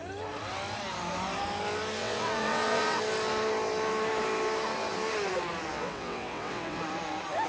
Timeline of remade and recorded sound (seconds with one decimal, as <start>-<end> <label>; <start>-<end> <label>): 0.0-2.0 recorded; 2.0-3.0 remade; 3.0-5.7 recorded; 5.7-6.8 remade; 6.8-7.5 recorded